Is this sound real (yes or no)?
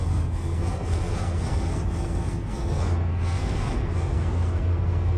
no